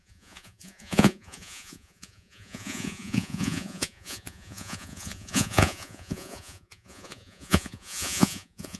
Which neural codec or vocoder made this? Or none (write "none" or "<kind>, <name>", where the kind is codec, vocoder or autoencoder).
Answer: vocoder, Vocos